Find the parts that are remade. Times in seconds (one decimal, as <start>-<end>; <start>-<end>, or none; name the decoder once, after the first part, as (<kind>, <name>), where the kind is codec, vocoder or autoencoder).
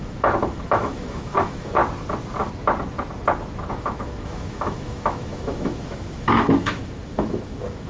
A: 0.0-1.8 (autoencoder, DAC-VAE); 3.7-7.9